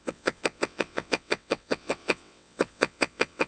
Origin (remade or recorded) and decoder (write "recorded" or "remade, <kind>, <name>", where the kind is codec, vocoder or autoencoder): remade, vocoder, WaveNeXt